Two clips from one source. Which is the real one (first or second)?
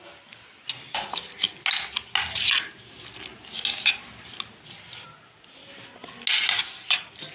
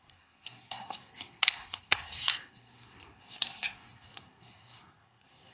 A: first